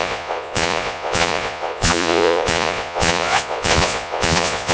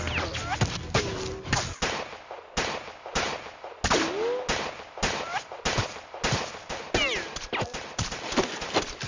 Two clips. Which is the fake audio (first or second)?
first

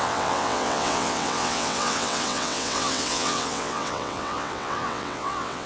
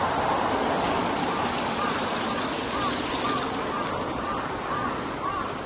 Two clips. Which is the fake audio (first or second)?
first